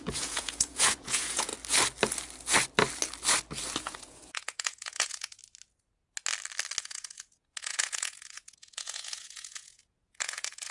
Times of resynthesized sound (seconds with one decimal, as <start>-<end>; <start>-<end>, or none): 0.0-1.5; 3.8-5.4; 6.8-10.7